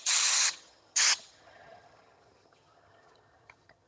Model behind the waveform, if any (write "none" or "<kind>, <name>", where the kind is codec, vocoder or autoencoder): vocoder, HiFi-GAN